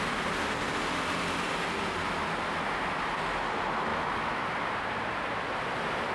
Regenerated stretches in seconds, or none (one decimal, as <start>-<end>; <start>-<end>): 3.9-4.4